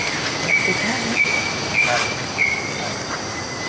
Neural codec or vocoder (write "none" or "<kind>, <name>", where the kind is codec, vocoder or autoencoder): none